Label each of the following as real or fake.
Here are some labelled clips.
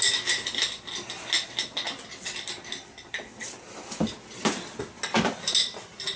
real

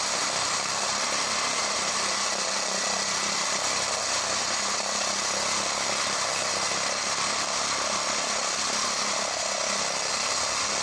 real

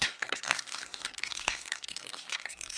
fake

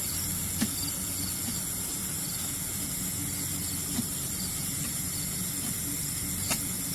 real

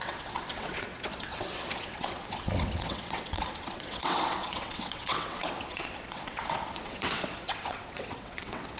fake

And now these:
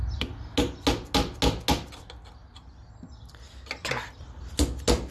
real